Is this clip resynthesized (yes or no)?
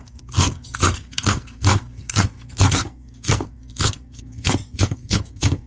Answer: yes